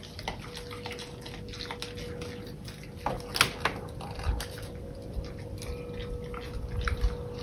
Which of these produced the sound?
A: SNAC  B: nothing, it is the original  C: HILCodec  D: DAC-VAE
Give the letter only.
B